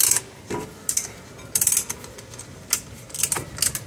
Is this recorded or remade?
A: recorded